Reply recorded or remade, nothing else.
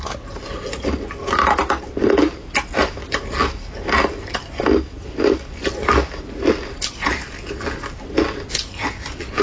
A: recorded